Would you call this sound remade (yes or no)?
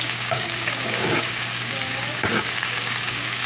yes